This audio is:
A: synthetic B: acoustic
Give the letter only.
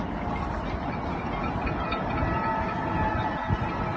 B